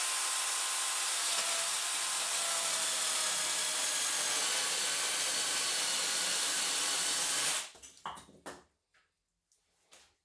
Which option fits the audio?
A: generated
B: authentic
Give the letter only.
B